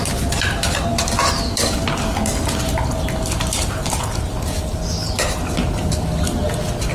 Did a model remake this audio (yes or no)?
no